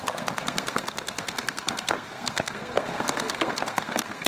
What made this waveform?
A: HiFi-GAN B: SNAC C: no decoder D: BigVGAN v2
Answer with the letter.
B